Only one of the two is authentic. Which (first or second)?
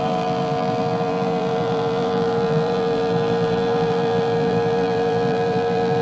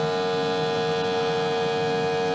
second